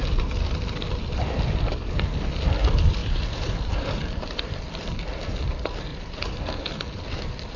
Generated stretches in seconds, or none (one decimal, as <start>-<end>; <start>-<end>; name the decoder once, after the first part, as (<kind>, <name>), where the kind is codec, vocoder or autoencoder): 3.0-4.6 (vocoder, BigVGAN v2); 5.9-6.7